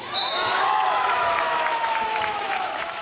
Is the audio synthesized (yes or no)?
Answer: yes